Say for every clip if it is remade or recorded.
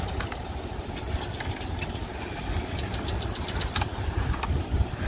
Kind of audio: recorded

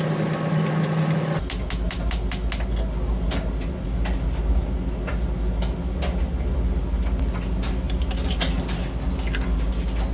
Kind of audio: recorded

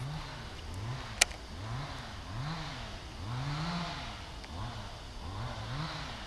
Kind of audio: recorded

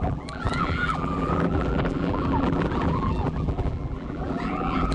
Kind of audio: remade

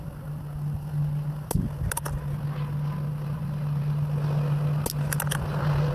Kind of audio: recorded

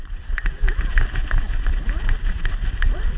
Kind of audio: recorded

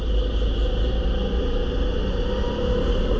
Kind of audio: recorded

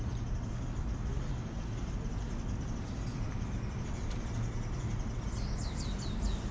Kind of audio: recorded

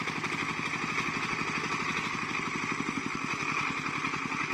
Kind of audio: recorded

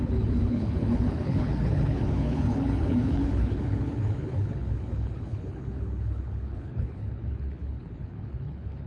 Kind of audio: remade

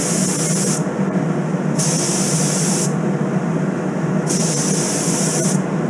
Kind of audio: recorded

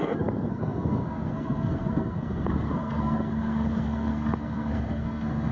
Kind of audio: remade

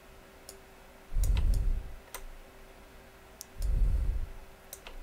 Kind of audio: recorded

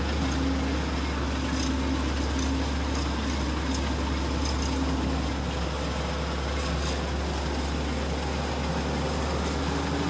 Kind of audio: recorded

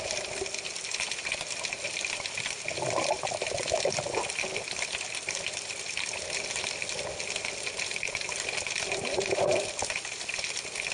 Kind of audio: recorded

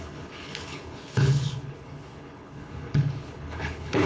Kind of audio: remade